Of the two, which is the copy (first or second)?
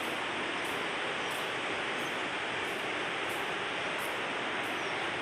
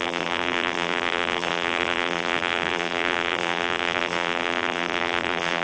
second